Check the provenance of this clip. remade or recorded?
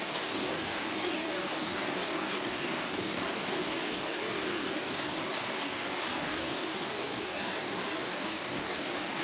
remade